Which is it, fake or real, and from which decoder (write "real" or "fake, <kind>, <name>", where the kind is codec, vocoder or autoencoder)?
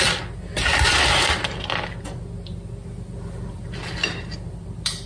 real